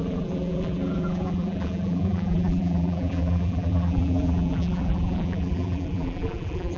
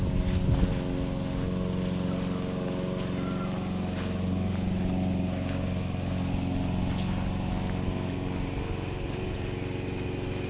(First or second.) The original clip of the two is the second